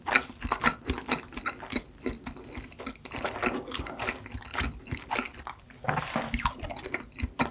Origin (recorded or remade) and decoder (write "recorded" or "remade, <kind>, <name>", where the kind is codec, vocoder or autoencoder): recorded